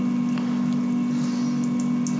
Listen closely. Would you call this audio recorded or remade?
recorded